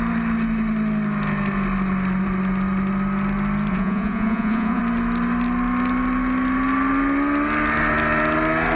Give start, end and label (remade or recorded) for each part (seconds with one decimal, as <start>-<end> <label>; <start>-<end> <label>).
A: 0.0-3.7 recorded; 3.7-4.8 remade; 4.8-8.8 recorded